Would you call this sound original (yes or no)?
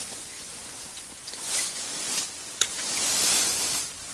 no